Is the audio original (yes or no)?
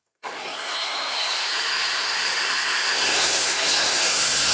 no